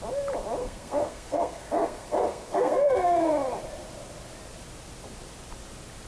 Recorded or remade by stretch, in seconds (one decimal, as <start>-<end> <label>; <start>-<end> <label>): 0.0-0.6 recorded; 0.6-3.3 remade; 3.3-6.1 recorded